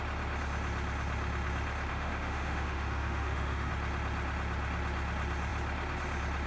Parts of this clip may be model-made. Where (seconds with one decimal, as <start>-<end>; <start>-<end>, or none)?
1.9-3.7